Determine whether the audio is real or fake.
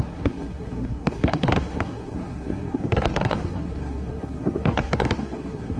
fake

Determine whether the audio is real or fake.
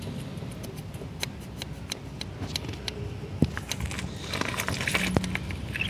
real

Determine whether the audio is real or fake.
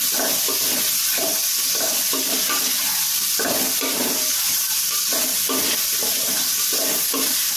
real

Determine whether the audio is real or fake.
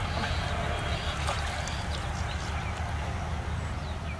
real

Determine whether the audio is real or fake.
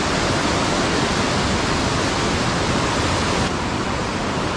real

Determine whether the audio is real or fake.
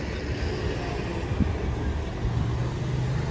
real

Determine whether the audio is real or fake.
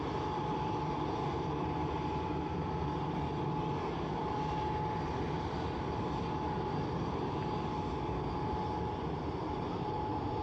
fake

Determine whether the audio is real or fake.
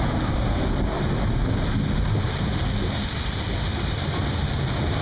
real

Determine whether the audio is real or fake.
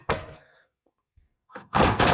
fake